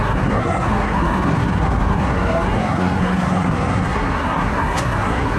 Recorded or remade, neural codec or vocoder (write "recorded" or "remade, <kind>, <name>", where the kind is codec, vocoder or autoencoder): remade, codec, SNAC